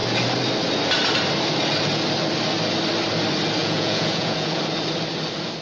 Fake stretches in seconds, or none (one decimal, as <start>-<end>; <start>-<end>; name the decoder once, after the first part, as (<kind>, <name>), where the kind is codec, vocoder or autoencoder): 3.6-4.6 (vocoder, Vocos)